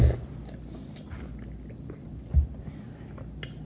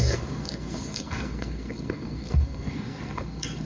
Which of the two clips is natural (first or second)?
first